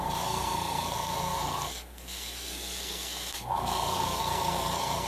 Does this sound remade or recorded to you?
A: remade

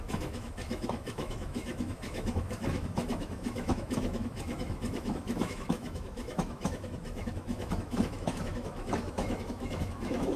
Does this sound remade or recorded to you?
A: remade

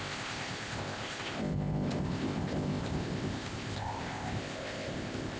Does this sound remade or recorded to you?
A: remade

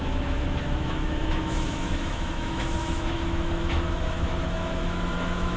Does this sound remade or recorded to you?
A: remade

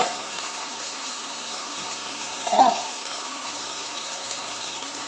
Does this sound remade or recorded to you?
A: remade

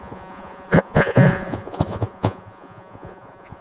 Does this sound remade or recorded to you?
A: remade